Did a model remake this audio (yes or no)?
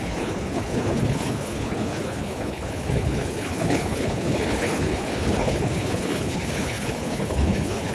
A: yes